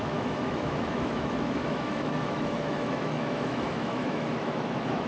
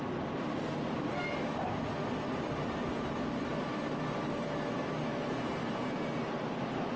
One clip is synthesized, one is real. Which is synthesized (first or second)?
first